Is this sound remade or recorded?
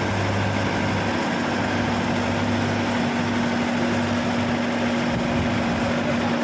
recorded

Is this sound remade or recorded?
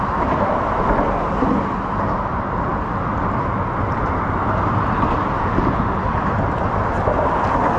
recorded